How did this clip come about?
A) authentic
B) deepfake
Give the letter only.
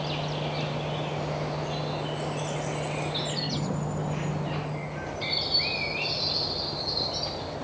A